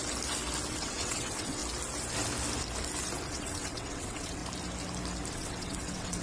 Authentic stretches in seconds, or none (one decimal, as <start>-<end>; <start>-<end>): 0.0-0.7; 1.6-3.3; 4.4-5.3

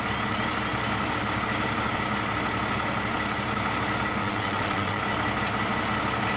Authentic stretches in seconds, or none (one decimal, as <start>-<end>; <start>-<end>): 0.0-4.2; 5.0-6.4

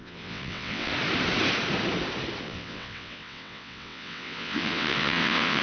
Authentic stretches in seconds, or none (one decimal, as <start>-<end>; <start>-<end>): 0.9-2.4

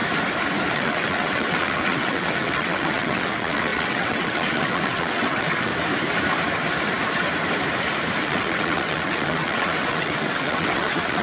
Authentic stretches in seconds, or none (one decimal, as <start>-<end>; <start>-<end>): 0.0-0.7; 5.7-8.2

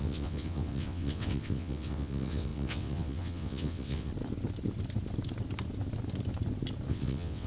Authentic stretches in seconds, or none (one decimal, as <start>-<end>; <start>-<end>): 4.1-6.9